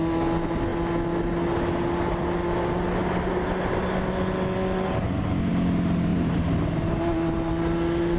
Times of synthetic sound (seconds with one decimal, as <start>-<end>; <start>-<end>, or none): none